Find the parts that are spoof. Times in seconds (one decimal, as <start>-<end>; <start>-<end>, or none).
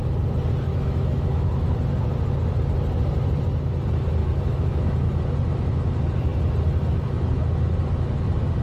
0.7-1.5; 4.2-5.2